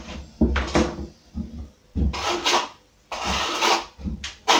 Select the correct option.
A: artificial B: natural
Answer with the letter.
B